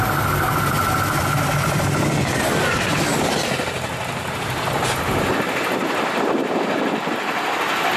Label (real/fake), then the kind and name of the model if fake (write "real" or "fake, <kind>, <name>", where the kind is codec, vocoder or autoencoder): real